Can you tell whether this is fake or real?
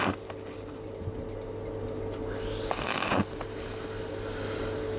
real